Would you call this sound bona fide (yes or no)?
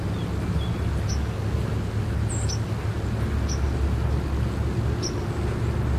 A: yes